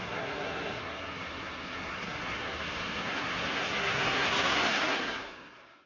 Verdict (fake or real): fake